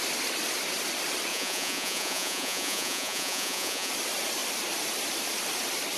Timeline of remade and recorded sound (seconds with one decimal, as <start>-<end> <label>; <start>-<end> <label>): 0.0-1.3 recorded; 1.3-3.9 remade; 3.9-6.0 recorded